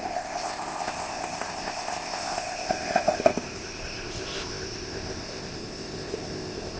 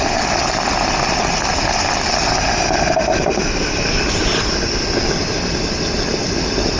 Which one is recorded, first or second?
second